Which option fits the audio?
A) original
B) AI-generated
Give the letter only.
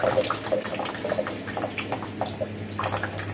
A